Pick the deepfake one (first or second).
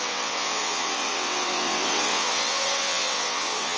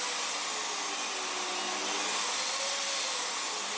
first